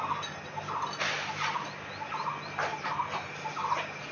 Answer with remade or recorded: recorded